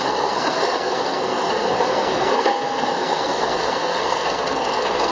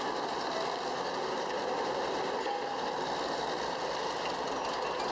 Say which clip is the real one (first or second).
second